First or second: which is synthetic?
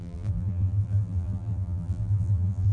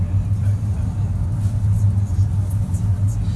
first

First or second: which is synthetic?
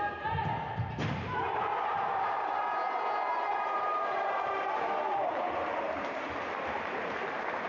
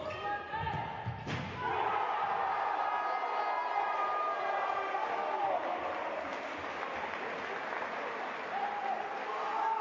first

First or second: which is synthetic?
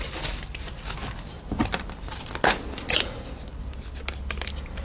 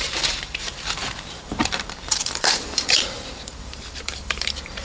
second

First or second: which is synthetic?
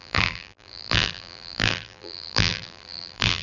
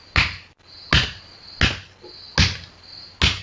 first